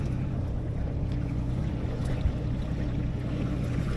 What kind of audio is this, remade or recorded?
remade